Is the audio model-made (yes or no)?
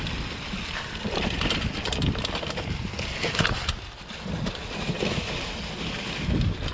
no